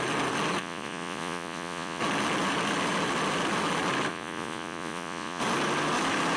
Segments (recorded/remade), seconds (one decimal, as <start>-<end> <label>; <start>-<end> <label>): 0.0-0.6 recorded; 0.6-2.0 remade; 2.0-4.1 recorded; 4.1-5.4 remade; 5.4-6.4 recorded